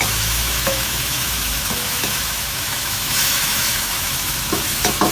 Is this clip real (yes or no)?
no